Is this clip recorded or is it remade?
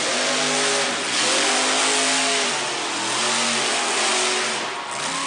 recorded